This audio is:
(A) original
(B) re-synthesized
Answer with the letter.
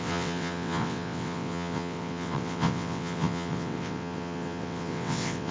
B